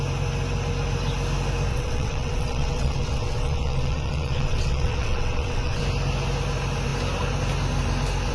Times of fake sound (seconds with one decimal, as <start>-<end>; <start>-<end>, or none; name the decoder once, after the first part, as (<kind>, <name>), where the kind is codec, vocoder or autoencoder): 1.7-5.8 (vocoder, WaveNeXt)